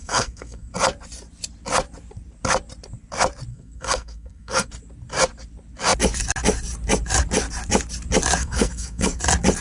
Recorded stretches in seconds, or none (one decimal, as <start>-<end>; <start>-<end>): 0.7-3.5; 4.7-8.4; 9.2-9.6